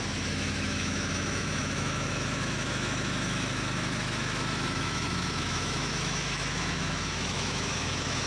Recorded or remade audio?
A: remade